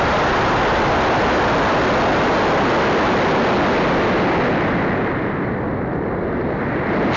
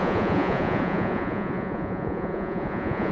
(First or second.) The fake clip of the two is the second